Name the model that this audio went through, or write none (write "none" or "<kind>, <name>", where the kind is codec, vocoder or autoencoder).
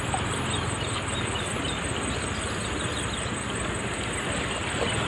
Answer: none